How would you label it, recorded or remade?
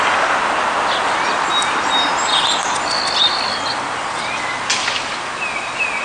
recorded